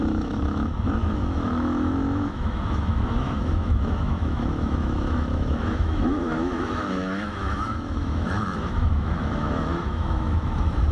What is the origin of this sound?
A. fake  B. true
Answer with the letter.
A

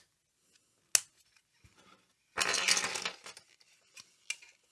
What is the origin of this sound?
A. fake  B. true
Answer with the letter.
B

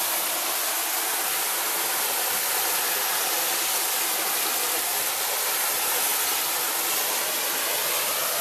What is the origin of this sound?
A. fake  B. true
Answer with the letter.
B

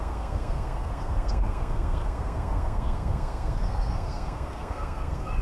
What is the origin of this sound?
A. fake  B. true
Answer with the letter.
A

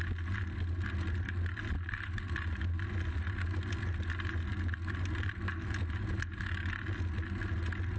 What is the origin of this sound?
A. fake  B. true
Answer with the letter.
B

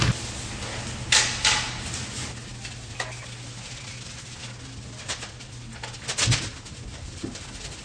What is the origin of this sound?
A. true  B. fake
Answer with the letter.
A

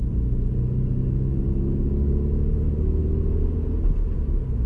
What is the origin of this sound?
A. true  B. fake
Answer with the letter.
A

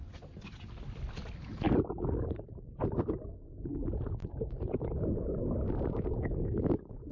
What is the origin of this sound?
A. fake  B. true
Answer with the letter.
B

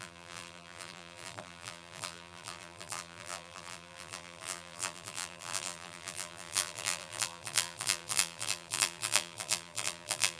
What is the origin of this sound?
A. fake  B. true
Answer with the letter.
A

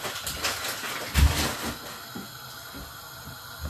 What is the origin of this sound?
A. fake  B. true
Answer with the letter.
B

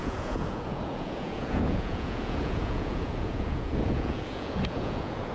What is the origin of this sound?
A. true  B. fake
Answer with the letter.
B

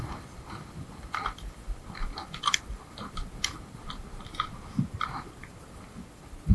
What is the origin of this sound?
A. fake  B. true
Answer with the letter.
B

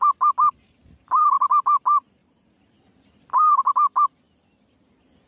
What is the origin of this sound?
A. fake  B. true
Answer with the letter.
B